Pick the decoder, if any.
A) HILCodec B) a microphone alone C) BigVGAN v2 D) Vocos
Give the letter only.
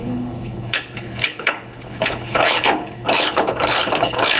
A